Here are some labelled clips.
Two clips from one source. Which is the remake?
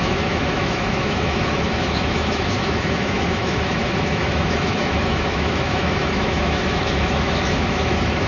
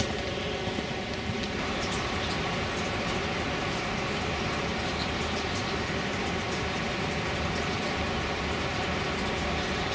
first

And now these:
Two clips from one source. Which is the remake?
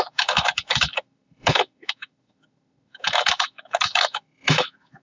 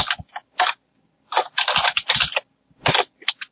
first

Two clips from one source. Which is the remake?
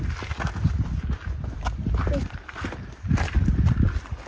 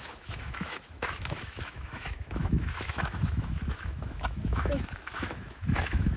second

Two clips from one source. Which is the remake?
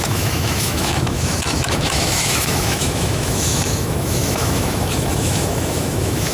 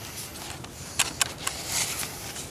first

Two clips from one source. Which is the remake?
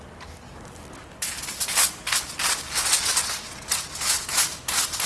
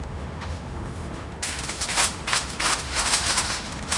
second